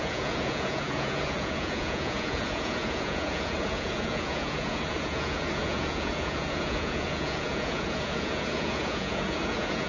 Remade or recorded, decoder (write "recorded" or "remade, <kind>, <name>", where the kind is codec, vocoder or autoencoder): remade, vocoder, Vocos